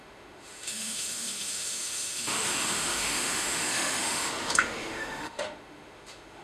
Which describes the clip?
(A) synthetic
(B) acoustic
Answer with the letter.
A